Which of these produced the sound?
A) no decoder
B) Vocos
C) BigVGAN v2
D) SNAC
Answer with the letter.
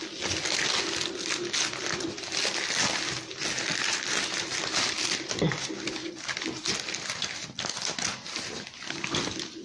A